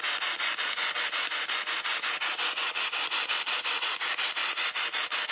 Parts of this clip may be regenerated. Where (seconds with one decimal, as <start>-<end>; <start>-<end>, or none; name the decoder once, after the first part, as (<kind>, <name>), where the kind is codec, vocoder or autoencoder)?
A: 0.6-3.8 (vocoder, Vocos); 4.4-5.3